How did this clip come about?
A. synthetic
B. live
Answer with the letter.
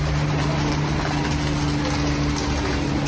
B